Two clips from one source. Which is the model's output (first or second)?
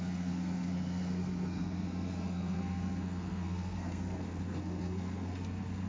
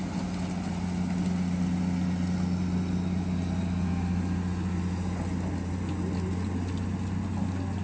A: first